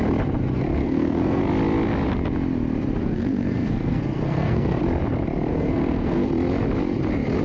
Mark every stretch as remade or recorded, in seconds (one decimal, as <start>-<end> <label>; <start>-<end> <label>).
0.0-0.8 recorded; 0.8-1.4 remade; 1.4-3.0 recorded; 3.0-4.8 remade; 4.8-5.5 recorded; 5.5-6.3 remade; 6.3-7.4 recorded